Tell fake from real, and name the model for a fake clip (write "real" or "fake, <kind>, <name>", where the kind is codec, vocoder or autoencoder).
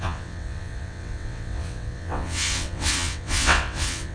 fake, vocoder, WaveNeXt